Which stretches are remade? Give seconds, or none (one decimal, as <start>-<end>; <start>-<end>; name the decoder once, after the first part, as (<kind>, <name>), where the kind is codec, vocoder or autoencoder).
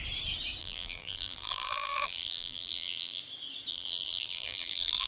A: 0.6-3.2 (vocoder, BigVGAN v2); 3.7-5.1